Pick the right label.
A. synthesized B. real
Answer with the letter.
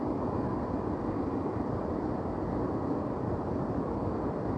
A